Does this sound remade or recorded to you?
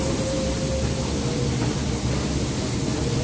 recorded